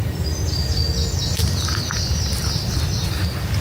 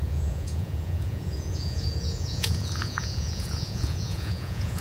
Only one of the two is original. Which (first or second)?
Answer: first